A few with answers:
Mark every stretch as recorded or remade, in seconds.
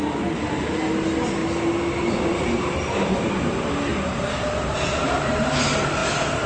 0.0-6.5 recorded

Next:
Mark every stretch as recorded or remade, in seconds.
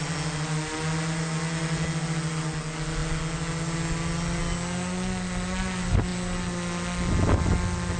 0.0-8.0 recorded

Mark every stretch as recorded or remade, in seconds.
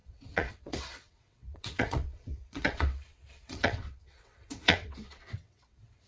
0.0-6.1 remade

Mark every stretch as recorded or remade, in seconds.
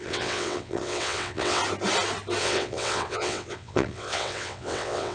0.0-1.6 remade; 1.6-2.4 recorded; 2.4-5.1 remade